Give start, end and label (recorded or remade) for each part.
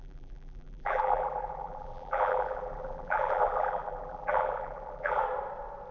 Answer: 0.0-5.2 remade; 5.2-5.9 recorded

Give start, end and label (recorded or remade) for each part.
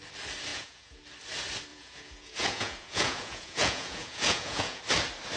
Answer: 0.0-0.5 recorded; 0.5-1.0 remade; 1.0-1.7 recorded; 1.7-4.8 remade; 4.8-5.4 recorded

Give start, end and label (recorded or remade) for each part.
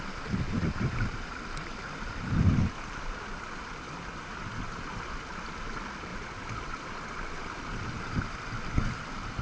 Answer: 0.0-2.6 remade; 2.6-4.6 recorded; 4.6-6.1 remade; 6.1-8.9 recorded; 8.9-9.4 remade